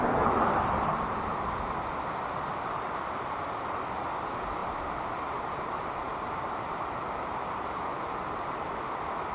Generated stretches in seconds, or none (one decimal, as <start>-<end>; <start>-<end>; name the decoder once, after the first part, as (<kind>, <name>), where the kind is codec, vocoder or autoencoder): 0.9-1.4 (vocoder, BigVGAN v2); 4.6-8.2